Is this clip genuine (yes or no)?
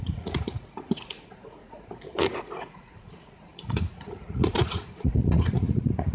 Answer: no